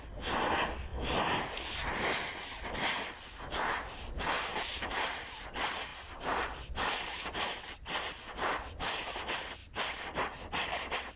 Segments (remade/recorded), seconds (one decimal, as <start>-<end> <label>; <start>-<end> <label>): 0.0-4.5 recorded; 4.5-5.4 remade; 5.4-11.2 recorded